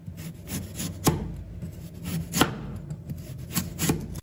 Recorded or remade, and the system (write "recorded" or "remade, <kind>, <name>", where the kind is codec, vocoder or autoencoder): recorded